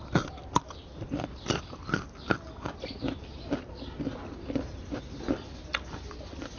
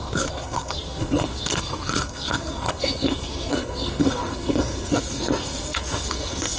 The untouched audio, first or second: first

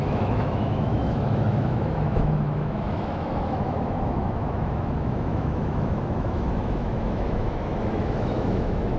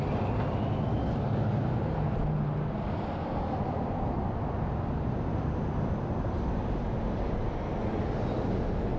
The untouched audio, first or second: second